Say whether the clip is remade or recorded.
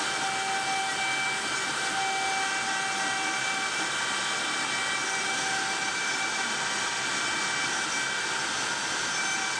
recorded